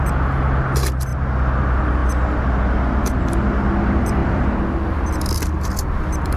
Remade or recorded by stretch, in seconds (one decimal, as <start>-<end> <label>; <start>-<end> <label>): 0.0-6.4 recorded